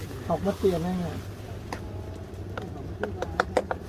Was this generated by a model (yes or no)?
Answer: no